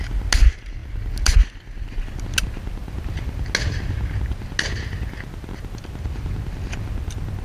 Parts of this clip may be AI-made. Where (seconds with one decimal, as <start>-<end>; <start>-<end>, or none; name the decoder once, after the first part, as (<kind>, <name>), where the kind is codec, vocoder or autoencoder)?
none